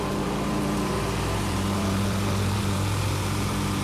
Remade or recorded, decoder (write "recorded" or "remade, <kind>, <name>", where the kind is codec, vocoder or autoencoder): remade, vocoder, BigVGAN v2